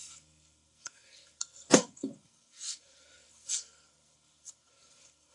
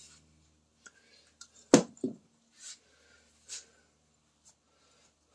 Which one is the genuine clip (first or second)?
second